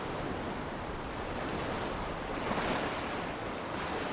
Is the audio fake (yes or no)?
no